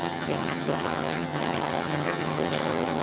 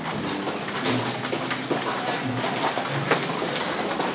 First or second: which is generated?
first